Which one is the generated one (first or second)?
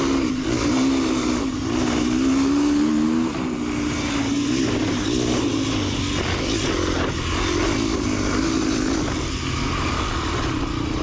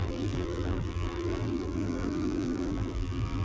second